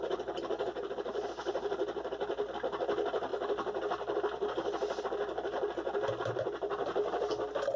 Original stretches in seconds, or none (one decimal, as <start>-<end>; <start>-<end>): 0.0-3.3; 5.0-7.8

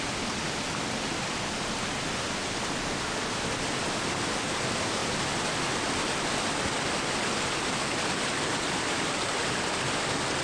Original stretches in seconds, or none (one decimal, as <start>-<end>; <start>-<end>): 0.0-10.4

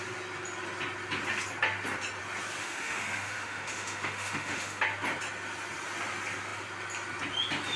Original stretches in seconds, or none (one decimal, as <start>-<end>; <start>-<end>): 0.0-2.6; 4.8-7.8

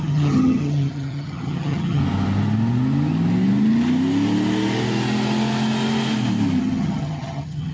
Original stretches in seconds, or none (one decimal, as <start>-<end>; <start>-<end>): 2.0-6.6

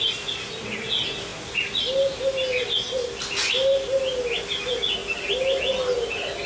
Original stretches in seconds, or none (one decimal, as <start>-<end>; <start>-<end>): 0.0-6.5

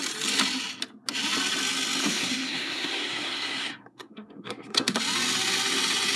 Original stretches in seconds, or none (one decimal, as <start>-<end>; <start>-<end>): 0.0-2.0; 5.0-6.2

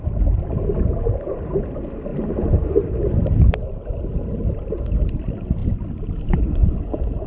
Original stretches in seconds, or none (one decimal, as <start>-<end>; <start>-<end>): 0.0-7.3

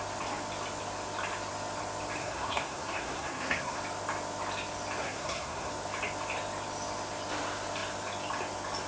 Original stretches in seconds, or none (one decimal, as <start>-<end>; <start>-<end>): 0.0-2.2; 3.8-5.0; 5.7-8.9